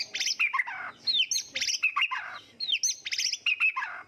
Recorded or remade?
recorded